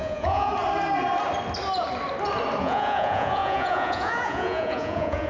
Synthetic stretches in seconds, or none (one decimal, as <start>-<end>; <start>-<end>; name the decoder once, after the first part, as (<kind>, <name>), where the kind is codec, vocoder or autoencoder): 0.0-0.5 (vocoder, Vocos); 2.6-5.3